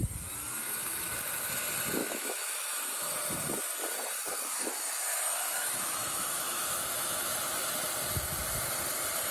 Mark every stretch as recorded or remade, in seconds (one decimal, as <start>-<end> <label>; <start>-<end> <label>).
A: 0.0-2.0 recorded; 2.0-3.1 remade; 3.1-5.1 recorded; 5.1-7.4 remade; 7.4-9.3 recorded